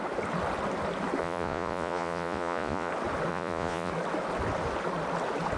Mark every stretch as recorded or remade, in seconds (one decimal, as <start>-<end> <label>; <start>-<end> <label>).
0.0-1.2 recorded; 1.2-2.9 remade; 2.9-3.3 recorded; 3.3-3.9 remade; 3.9-5.6 recorded

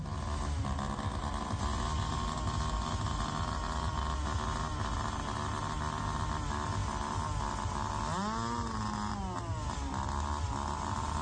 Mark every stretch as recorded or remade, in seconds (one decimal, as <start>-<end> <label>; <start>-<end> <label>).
0.0-11.2 recorded

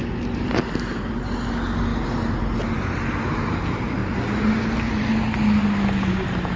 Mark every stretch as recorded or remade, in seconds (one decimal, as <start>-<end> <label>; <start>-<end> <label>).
0.0-6.6 recorded

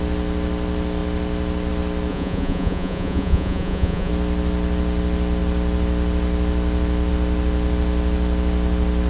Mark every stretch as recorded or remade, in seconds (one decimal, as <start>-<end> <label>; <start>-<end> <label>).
0.0-2.1 recorded; 2.1-4.1 remade; 4.1-9.1 recorded

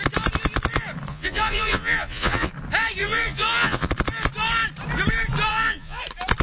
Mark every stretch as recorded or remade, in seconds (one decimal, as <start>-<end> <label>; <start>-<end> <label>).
0.0-1.1 recorded; 1.1-2.5 remade; 2.5-3.0 recorded; 3.0-3.9 remade; 3.9-5.5 recorded; 5.5-6.0 remade; 6.0-6.4 recorded

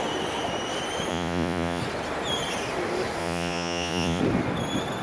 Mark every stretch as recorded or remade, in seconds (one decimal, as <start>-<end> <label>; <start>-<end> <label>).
0.0-1.1 recorded; 1.1-1.8 remade; 1.8-3.2 recorded; 3.2-4.2 remade; 4.2-5.0 recorded